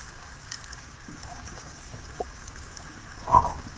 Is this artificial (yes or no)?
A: yes